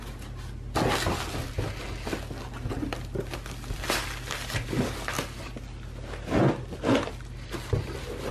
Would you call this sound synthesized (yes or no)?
no